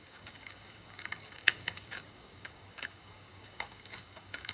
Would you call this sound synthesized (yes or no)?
yes